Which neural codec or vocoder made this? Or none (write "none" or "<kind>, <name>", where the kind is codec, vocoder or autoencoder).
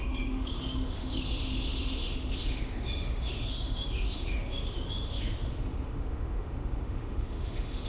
autoencoder, DAC-VAE